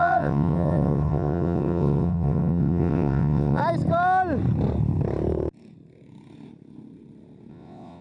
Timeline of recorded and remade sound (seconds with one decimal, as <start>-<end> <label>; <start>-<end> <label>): 0.0-3.6 remade; 3.6-7.5 recorded; 7.5-8.0 remade